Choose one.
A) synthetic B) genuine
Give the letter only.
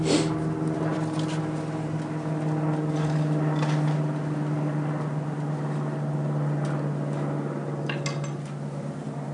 B